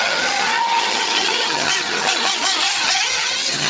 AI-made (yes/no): yes